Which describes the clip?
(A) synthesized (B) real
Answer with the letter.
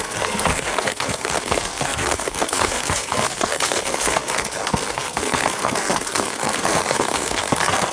A